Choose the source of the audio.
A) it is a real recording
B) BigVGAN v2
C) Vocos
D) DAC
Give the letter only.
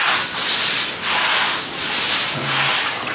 A